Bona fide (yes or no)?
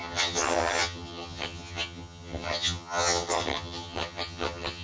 no